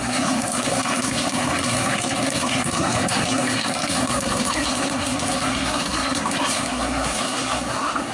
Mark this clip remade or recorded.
remade